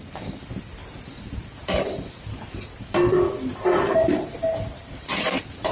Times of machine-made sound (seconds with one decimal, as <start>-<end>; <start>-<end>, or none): 0.8-4.2; 4.7-5.7